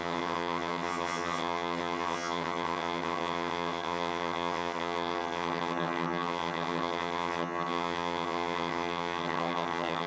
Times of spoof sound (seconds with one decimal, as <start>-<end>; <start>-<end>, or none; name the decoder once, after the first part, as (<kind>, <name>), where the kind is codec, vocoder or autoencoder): 0.0-10.1 (vocoder, HiFi-GAN)

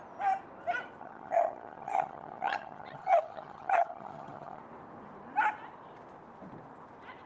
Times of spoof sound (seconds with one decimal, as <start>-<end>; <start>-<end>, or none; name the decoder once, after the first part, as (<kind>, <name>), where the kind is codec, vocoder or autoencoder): 1.0-4.6 (vocoder, HiFi-GAN)

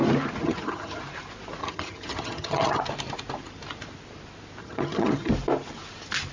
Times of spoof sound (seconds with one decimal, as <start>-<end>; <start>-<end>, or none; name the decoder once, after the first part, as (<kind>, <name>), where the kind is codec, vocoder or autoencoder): 0.4-1.0 (vocoder, HiFi-GAN); 1.6-2.8; 4.6-5.3

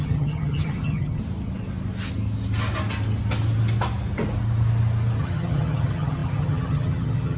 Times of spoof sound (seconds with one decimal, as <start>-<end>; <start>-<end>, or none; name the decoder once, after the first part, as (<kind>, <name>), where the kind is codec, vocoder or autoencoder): 0.0-1.2 (vocoder, HiFi-GAN); 5.2-7.4

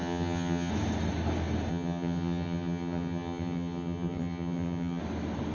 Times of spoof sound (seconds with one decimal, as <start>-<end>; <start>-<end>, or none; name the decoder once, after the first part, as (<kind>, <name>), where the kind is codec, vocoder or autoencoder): 0.0-0.7 (vocoder, HiFi-GAN); 1.7-5.0